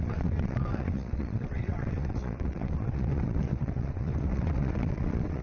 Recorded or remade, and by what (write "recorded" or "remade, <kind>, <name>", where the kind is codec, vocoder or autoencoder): remade, vocoder, WaveNeXt